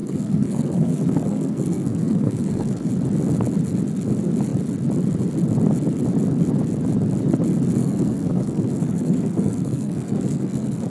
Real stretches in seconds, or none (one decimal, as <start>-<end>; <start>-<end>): 2.9-7.8